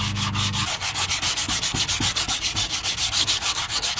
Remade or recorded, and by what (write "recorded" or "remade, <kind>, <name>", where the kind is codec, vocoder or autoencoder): remade, codec, DAC